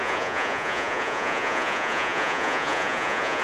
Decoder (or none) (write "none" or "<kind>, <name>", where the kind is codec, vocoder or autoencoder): vocoder, Vocos